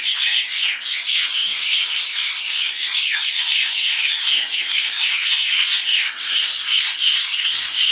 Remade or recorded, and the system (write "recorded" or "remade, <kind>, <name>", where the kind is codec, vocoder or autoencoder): remade, codec, SNAC